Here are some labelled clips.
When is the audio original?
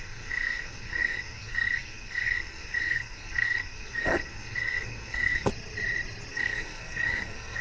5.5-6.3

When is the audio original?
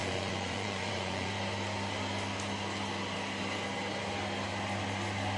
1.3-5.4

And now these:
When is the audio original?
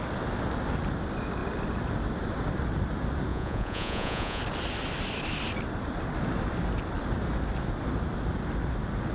0.0-3.3; 4.4-9.1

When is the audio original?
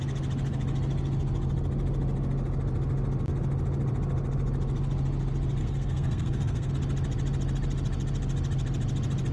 0.0-5.6; 6.7-9.3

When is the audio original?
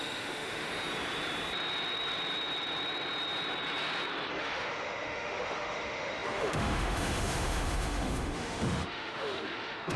0.7-4.4